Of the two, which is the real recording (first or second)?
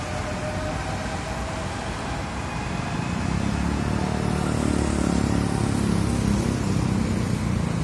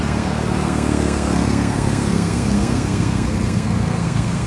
first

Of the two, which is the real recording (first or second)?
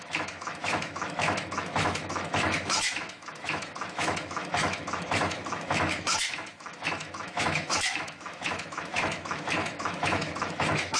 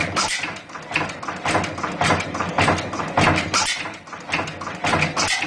second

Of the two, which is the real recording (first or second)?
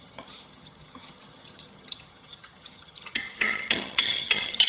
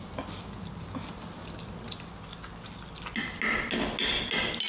second